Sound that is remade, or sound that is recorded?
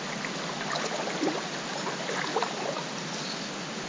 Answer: recorded